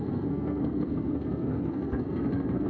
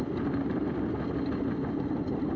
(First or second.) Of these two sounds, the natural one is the second